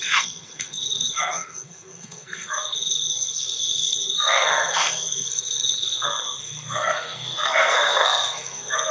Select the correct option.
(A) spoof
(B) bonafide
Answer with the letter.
A